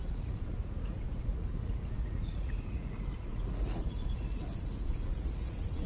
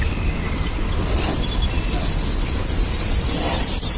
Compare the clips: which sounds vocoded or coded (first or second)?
first